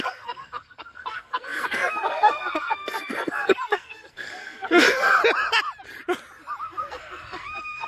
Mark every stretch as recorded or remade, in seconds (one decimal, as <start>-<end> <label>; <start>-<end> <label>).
0.0-5.2 remade; 5.2-6.6 recorded; 6.6-7.9 remade